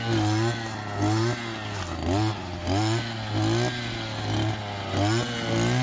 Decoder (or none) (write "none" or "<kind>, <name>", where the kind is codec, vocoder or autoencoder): none